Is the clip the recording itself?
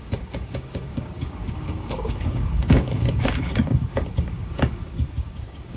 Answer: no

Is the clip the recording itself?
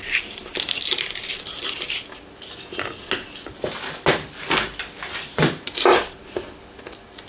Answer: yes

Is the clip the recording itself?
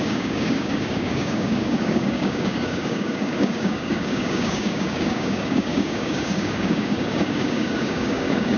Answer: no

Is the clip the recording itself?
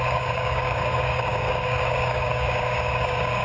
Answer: no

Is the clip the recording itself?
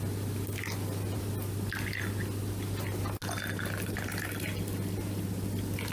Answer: yes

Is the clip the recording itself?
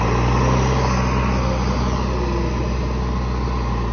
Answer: yes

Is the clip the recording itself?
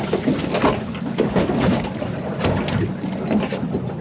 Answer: yes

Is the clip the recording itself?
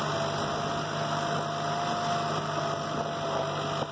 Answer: yes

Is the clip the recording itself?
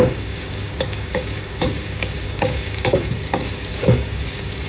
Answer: no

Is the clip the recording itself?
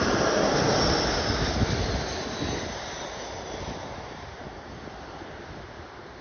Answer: yes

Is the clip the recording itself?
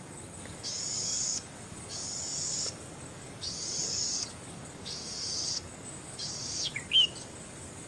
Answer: no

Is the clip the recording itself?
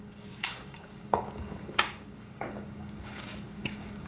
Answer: no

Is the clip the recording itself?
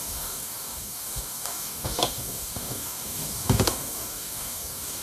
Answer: no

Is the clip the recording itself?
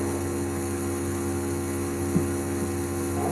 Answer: yes